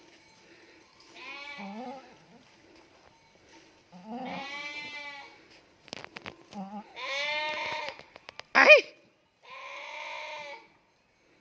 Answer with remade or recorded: recorded